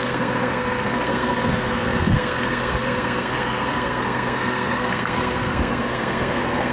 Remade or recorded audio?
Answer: remade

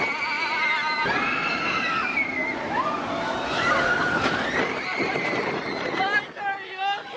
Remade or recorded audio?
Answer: recorded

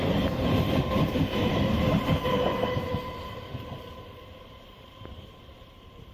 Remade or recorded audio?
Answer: remade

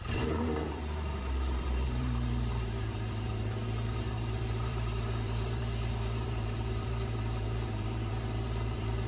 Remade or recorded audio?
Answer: remade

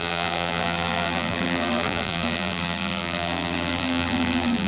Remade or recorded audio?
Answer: remade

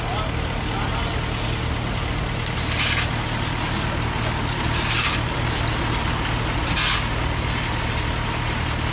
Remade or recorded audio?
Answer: recorded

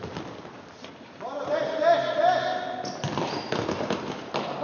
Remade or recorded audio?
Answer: recorded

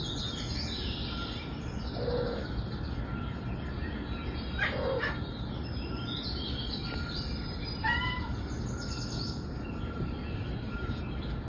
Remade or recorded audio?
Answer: recorded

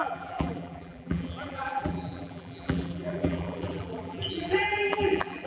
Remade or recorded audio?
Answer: remade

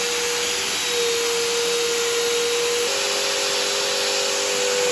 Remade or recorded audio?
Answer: recorded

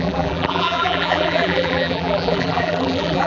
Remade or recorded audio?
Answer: remade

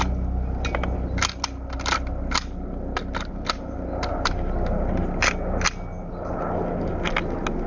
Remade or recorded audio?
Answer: recorded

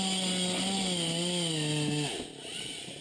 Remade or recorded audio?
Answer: recorded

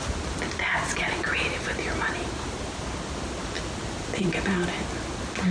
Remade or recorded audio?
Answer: recorded